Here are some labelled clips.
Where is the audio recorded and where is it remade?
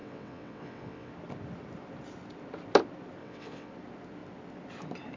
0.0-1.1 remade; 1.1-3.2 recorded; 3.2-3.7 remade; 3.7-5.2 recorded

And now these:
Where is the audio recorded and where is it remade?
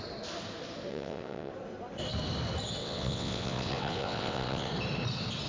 0.0-0.9 recorded; 0.9-1.5 remade; 1.5-2.8 recorded; 2.8-4.7 remade; 4.7-5.5 recorded